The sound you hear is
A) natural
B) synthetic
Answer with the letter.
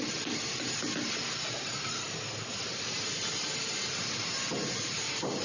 A